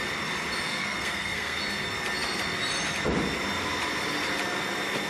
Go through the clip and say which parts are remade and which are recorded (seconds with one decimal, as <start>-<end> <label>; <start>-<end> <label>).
0.0-0.7 recorded; 0.7-1.6 remade; 1.6-5.1 recorded